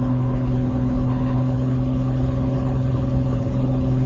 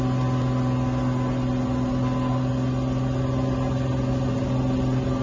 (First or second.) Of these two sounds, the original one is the second